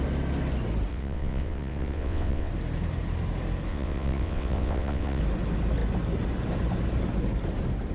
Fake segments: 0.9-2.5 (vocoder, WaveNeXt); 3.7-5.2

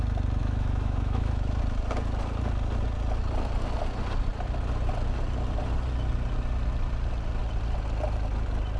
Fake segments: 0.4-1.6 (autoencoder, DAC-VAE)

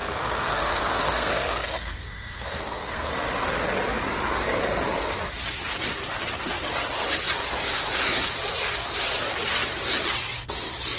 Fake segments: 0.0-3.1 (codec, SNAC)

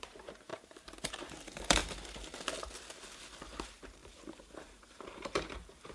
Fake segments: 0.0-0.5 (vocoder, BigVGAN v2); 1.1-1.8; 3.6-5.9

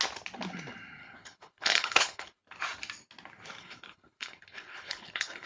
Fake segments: 1.0-2.4 (codec, HILCodec); 3.6-5.5

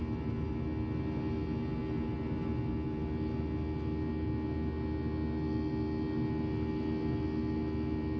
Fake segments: none

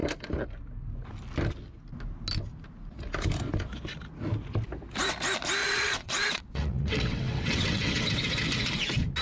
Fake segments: 5.6-8.1 (vocoder, WaveNeXt)